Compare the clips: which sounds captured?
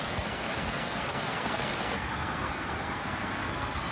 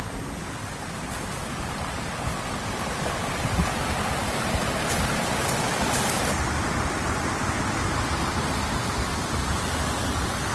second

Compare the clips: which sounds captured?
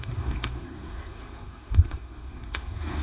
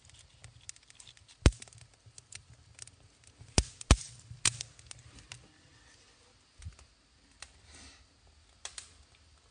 second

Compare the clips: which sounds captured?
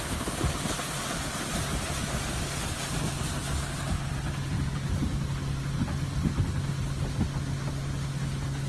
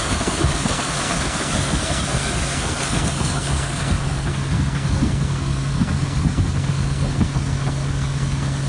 first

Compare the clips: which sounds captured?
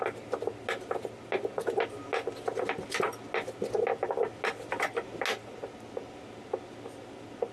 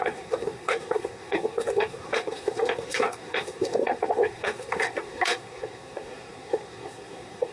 first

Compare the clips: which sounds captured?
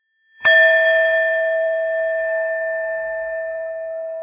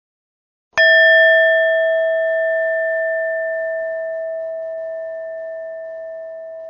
second